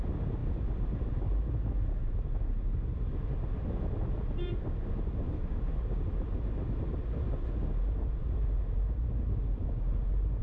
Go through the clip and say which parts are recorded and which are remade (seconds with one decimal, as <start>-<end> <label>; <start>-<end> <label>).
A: 0.0-10.4 recorded